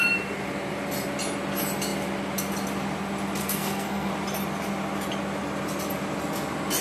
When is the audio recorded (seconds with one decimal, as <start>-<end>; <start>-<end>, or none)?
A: 0.0-3.4; 4.1-6.8